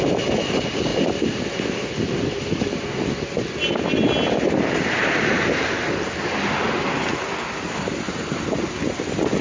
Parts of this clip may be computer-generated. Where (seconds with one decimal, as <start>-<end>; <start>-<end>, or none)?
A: 0.9-2.6